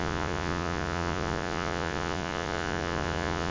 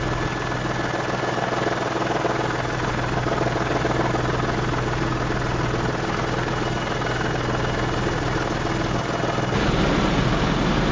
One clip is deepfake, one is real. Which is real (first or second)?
second